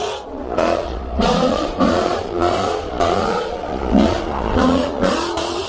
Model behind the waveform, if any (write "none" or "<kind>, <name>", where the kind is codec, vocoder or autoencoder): vocoder, Vocos